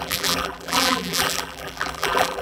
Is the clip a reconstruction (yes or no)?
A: yes